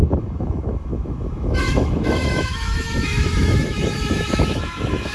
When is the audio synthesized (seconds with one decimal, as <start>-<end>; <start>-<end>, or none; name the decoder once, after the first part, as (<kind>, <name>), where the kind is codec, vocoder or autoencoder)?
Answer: 0.0-5.1 (autoencoder, DAC-VAE)